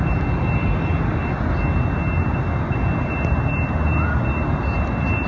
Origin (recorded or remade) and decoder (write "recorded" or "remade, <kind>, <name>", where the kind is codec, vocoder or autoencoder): recorded